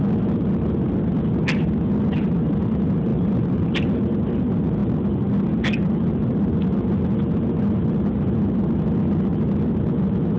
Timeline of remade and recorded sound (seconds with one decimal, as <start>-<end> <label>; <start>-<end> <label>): 0.0-3.1 recorded; 3.1-3.8 remade; 3.8-10.4 recorded

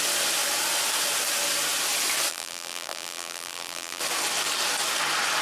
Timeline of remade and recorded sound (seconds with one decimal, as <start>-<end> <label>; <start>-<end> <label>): 0.0-2.3 recorded; 2.3-4.0 remade; 4.0-5.4 recorded

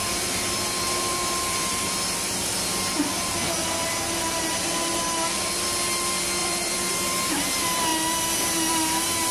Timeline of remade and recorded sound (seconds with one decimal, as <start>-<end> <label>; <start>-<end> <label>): 0.0-1.8 remade; 1.8-6.4 recorded; 6.4-7.2 remade; 7.2-9.3 recorded

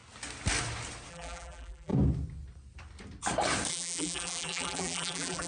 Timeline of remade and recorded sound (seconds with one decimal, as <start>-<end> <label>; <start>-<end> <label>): 0.0-1.1 recorded; 1.1-1.9 remade; 1.9-3.7 recorded; 3.7-5.5 remade

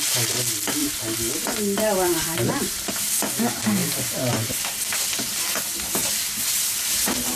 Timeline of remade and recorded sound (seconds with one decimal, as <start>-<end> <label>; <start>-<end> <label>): 0.0-0.8 recorded; 0.8-2.9 remade; 2.9-3.8 recorded; 3.8-4.7 remade; 4.7-6.0 recorded; 6.0-7.4 remade